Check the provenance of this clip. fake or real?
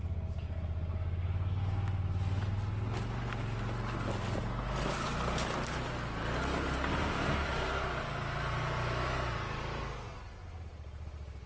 real